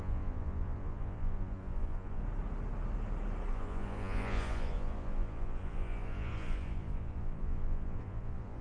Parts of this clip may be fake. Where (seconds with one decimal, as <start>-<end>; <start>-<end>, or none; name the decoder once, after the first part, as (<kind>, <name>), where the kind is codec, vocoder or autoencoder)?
0.0-2.2 (vocoder, Vocos); 3.5-8.6